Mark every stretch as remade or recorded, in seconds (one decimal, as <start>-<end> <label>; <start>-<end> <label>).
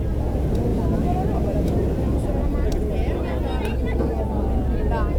0.0-5.2 recorded